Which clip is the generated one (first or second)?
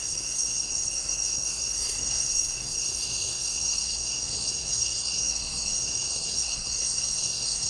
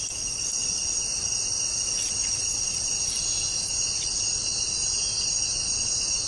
first